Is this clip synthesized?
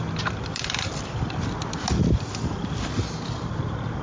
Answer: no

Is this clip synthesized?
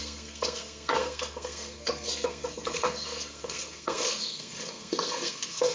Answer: yes